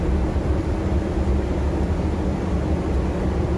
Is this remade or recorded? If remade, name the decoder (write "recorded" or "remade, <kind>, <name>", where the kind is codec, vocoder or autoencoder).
recorded